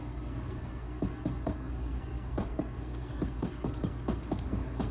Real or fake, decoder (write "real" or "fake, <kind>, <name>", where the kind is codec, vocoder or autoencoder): fake, codec, SNAC